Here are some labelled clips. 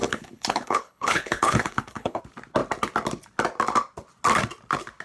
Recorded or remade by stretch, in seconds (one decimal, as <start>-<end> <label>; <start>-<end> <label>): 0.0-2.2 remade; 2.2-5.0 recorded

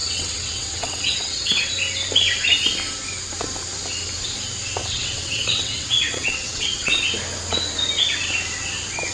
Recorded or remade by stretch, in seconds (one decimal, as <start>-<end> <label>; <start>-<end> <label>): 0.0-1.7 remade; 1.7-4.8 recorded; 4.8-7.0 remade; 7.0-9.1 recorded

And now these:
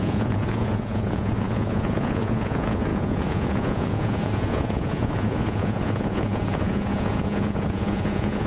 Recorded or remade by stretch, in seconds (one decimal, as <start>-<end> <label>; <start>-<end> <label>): 0.0-8.5 remade

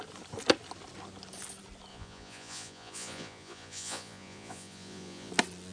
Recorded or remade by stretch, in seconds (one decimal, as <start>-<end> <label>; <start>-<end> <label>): 0.0-1.9 recorded; 1.9-5.3 remade; 5.3-5.7 recorded

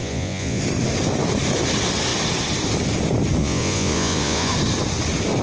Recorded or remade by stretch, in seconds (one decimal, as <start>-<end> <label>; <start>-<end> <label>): 0.0-0.6 remade; 0.6-3.4 recorded; 3.4-4.5 remade; 4.5-5.4 recorded